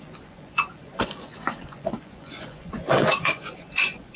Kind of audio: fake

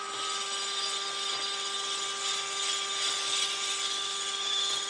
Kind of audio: real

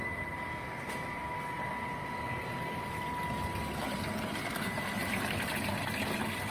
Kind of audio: real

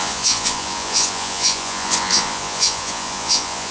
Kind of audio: fake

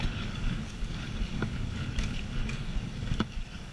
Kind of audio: fake